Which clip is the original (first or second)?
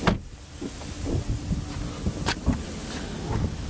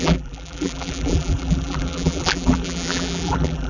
first